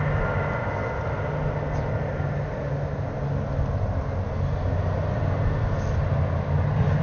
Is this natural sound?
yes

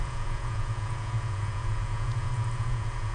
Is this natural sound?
no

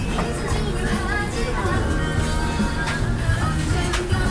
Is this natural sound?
yes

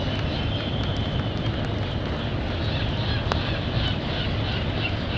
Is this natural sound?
yes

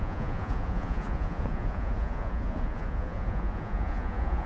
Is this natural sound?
no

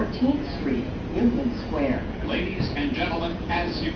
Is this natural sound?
no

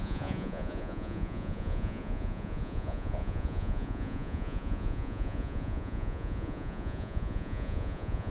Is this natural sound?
no